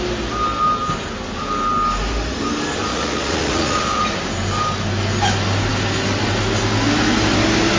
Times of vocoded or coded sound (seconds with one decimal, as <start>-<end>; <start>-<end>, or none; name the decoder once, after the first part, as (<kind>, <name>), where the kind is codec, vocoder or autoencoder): 2.9-4.0 (vocoder, Vocos)